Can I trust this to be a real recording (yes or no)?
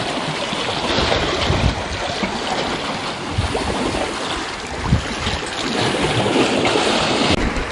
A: yes